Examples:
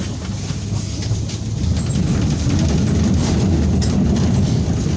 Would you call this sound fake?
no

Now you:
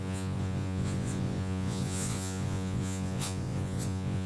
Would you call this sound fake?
yes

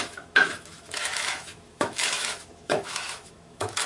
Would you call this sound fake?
yes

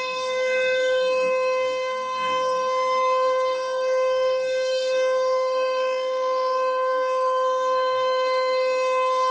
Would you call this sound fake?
yes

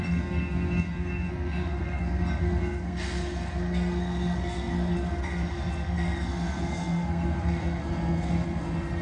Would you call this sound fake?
yes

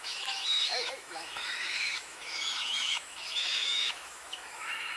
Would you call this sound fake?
yes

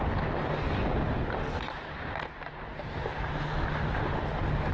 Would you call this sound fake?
no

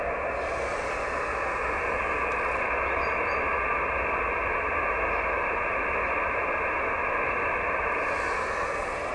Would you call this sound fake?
no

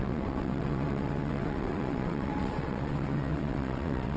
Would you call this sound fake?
yes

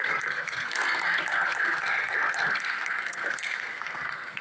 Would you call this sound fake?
yes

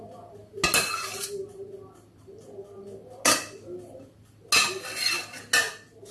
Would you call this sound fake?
no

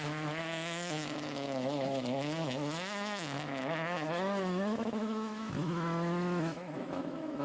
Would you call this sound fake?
yes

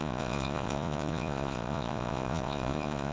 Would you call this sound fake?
yes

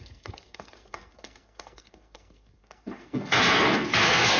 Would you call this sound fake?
yes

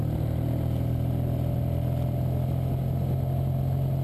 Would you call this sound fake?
no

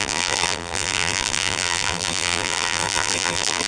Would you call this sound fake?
yes